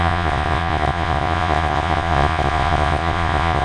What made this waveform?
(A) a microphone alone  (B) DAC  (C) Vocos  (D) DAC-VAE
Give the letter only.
C